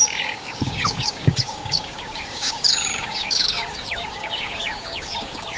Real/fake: fake